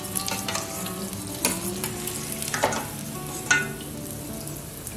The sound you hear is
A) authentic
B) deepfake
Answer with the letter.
A